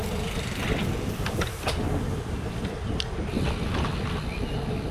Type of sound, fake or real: real